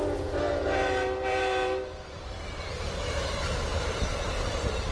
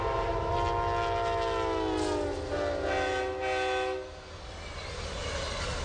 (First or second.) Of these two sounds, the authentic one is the second